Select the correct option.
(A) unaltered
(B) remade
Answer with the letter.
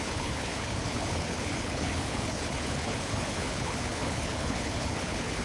B